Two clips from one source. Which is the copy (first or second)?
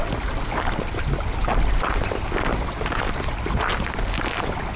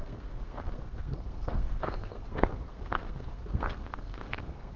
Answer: second